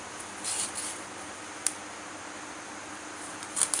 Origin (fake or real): real